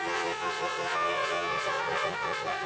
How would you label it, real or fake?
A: fake